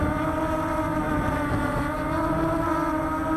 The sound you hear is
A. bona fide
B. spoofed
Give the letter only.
A